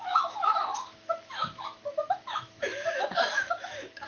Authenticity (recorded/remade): remade